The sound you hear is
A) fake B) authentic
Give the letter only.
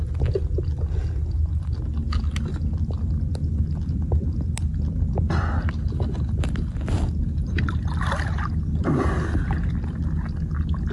B